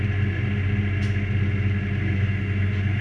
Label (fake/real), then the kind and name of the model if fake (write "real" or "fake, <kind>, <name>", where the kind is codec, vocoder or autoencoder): real